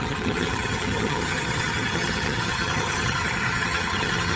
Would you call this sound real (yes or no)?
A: no